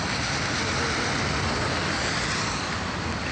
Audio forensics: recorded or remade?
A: remade